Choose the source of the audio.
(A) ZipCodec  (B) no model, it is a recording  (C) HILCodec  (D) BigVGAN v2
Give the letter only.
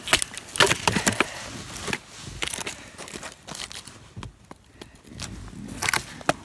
B